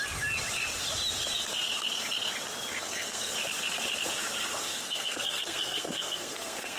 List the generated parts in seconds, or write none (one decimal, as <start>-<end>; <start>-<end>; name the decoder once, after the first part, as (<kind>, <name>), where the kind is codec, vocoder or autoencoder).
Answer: 2.7-3.3 (codec, SNAC); 4.6-6.8